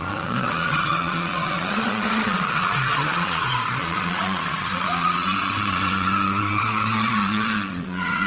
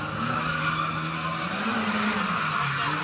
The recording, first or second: second